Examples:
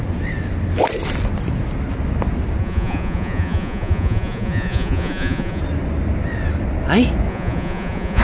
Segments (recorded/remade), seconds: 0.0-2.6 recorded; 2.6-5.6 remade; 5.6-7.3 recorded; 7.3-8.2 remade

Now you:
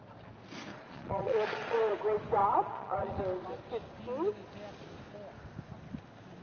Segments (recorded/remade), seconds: 0.0-0.7 recorded; 0.7-1.9 remade; 1.9-2.4 recorded; 2.4-3.2 remade; 3.2-6.4 recorded

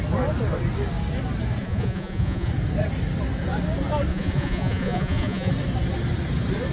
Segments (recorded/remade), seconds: 0.0-1.6 recorded; 1.6-2.5 remade; 2.5-4.1 recorded; 4.1-5.5 remade; 5.5-6.7 recorded